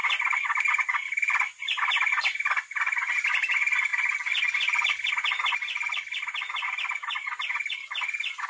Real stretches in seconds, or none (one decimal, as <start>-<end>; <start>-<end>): 0.0-8.5